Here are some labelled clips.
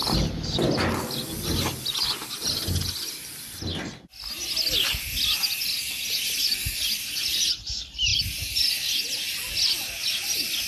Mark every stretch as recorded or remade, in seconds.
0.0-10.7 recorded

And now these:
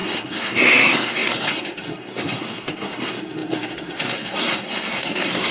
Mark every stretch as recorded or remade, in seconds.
0.0-5.5 remade